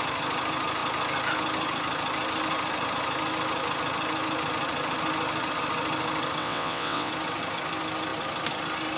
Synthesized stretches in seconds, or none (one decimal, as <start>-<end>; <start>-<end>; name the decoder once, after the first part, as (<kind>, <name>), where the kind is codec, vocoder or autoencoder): 6.4-7.1 (vocoder, WaveNeXt)